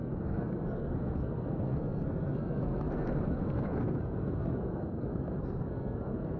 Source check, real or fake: fake